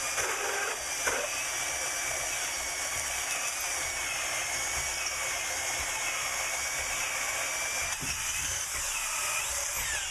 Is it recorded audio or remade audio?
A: recorded